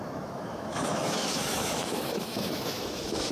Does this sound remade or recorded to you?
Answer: remade